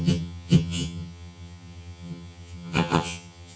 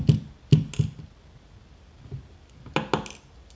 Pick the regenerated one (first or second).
first